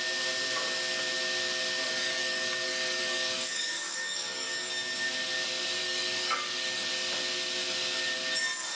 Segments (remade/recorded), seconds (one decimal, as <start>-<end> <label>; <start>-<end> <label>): 0.0-1.8 recorded; 1.8-4.7 remade; 4.7-5.8 recorded; 5.8-6.9 remade; 6.9-8.7 recorded